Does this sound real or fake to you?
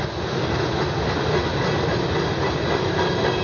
real